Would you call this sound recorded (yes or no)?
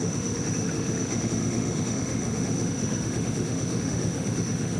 no